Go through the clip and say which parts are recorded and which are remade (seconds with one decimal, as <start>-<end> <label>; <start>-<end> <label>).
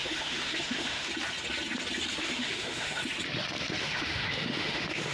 0.0-1.1 remade; 1.1-2.2 recorded; 2.2-3.0 remade; 3.0-3.8 recorded; 3.8-5.1 remade